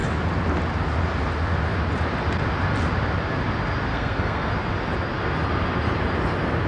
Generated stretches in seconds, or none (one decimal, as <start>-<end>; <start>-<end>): 3.9-4.5